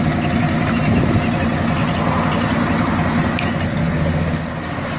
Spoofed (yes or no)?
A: no